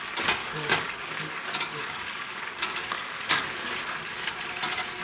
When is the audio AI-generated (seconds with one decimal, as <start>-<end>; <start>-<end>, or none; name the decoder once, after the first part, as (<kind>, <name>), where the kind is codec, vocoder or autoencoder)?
0.4-3.4 (codec, DAC)